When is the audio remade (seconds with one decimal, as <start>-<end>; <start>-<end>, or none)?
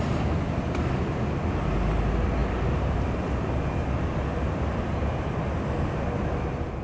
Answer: 2.4-3.5